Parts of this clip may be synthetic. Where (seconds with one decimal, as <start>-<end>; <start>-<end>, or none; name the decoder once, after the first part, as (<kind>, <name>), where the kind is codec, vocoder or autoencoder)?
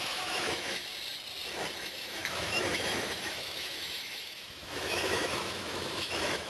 0.0-0.8 (autoencoder, DAC-VAE); 1.8-6.5